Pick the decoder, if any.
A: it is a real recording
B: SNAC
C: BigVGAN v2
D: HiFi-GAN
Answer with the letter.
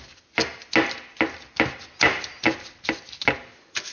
A